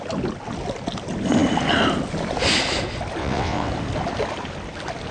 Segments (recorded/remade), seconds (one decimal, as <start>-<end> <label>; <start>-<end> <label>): 0.0-3.2 recorded; 3.2-3.7 remade; 3.7-5.1 recorded